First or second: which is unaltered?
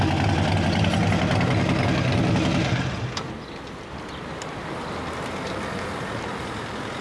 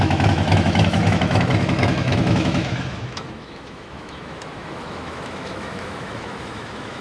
first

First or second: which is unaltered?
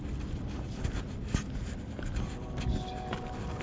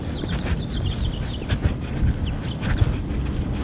first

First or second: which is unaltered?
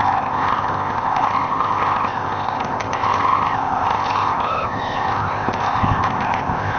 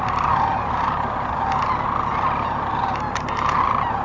second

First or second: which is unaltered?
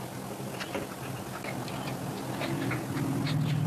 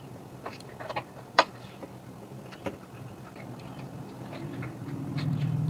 first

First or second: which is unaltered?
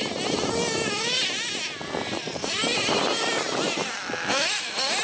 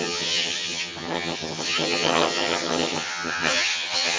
first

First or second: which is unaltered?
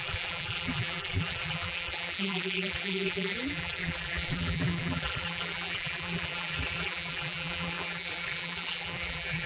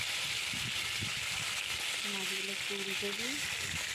second